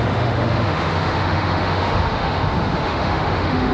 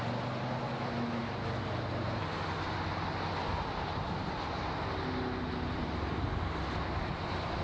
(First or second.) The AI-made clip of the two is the first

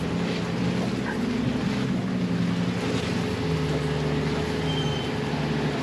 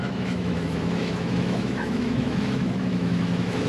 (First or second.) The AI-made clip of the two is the second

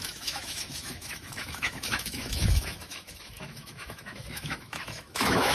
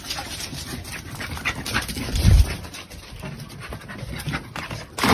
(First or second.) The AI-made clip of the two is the first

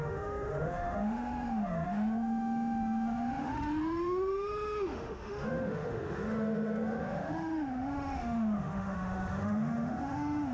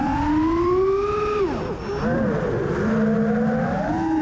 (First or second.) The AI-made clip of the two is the first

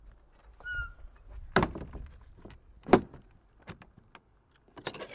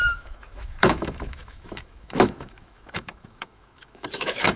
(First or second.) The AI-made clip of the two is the second